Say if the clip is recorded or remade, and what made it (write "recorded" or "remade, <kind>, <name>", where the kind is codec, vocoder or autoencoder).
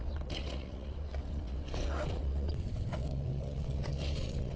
remade, vocoder, WaveNeXt